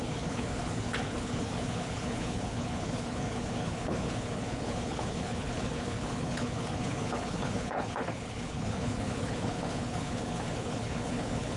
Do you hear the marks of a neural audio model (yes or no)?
yes